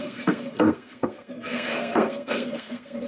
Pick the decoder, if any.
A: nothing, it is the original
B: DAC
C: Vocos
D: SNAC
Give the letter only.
D